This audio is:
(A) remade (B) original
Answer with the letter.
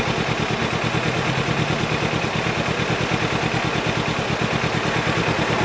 B